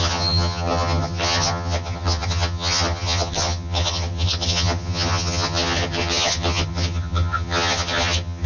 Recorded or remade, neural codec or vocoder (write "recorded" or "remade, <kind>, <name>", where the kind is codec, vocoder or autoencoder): remade, vocoder, HiFi-GAN